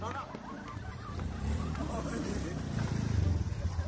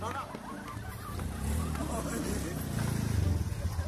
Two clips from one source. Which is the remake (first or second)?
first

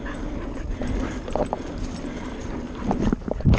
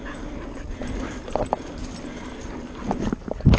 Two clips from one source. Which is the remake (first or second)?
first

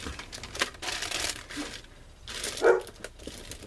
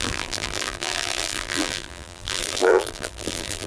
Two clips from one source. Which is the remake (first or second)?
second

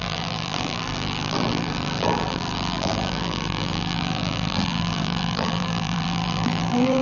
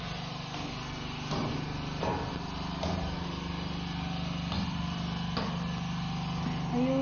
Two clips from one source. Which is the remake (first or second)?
first